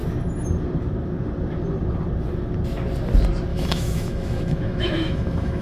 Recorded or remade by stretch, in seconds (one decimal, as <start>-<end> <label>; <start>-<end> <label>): 0.0-3.5 recorded; 3.5-5.6 remade